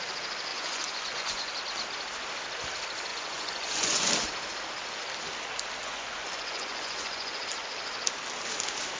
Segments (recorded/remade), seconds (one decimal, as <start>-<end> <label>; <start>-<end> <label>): 0.0-0.5 recorded; 0.5-1.5 remade; 1.5-3.1 recorded; 3.1-4.1 remade; 4.1-5.8 recorded; 5.8-7.4 remade; 7.4-9.0 recorded